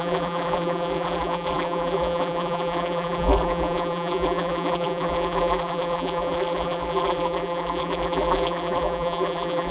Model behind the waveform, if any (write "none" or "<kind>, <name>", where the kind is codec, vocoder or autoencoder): vocoder, BigVGAN v2